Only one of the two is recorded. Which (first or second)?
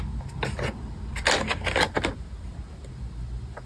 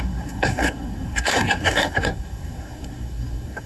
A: first